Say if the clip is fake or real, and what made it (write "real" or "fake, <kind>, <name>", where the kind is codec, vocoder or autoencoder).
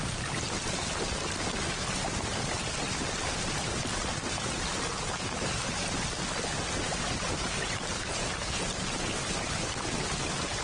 real